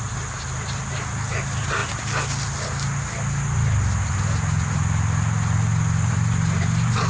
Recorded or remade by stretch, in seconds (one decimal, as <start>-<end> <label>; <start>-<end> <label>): 0.0-7.1 recorded